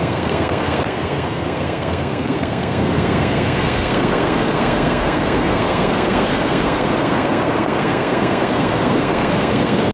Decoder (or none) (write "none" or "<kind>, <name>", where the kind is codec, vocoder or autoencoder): codec, SNAC